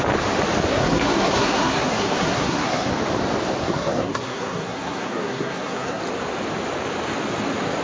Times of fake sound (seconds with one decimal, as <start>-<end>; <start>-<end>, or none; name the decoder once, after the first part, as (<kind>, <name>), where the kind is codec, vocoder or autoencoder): 0.7-2.9 (codec, SNAC); 3.6-6.0